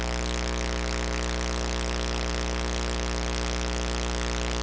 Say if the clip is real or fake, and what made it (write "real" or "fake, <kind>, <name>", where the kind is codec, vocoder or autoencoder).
real